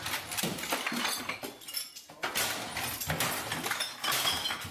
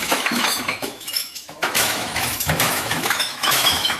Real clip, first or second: first